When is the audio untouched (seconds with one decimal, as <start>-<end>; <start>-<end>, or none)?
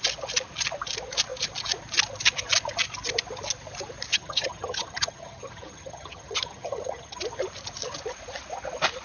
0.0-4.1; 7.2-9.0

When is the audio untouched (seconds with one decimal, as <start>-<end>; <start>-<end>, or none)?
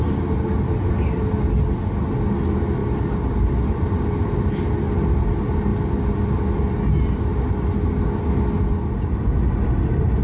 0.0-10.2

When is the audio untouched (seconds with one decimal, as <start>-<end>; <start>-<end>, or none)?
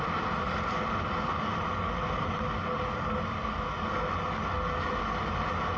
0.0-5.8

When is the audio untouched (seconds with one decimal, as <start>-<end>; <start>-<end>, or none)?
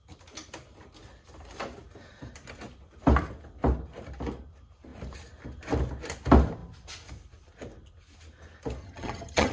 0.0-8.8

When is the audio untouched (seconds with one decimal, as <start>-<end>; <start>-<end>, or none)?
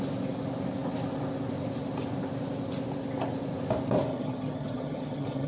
0.0-4.1